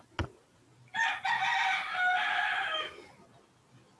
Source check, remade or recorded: recorded